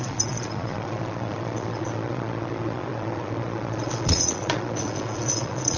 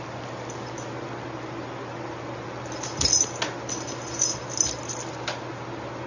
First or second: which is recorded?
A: second